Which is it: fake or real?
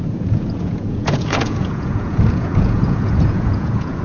fake